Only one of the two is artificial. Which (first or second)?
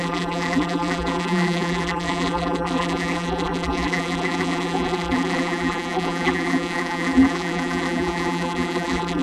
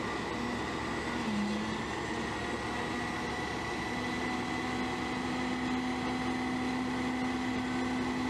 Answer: first